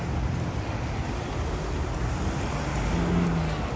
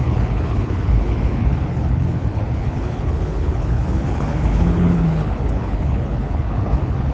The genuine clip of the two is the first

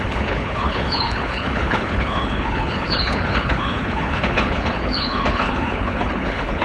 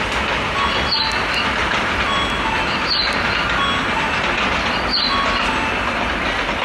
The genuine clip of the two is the second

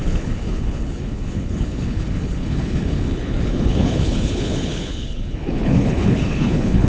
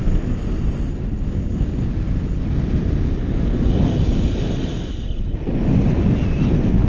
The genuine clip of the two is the second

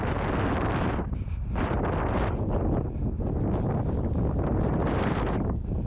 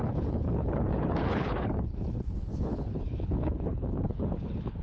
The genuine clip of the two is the first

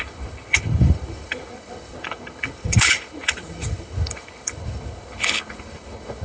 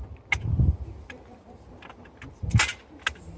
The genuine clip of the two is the second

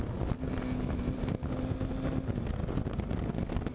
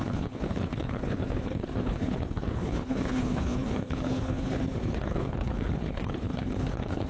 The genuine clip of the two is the first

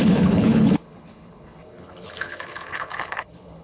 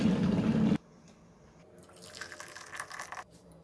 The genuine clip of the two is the second